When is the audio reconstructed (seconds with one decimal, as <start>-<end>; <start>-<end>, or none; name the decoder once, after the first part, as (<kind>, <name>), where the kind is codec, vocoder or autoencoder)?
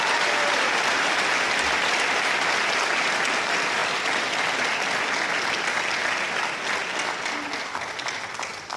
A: 0.4-1.1 (vocoder, BigVGAN v2)